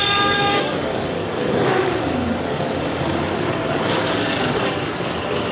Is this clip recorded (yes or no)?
no